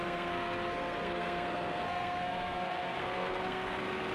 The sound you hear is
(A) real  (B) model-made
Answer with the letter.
B